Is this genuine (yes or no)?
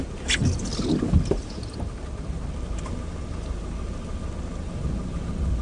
yes